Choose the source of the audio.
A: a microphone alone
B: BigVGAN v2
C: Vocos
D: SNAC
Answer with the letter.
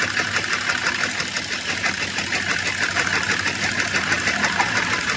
A